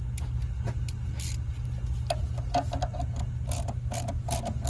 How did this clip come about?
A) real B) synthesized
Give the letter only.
A